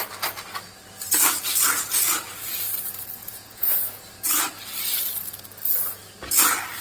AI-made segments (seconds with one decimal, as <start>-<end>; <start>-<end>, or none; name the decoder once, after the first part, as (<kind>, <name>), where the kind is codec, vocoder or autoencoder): 3.2-4.0 (vocoder, Vocos)